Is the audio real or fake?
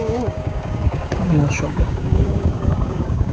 fake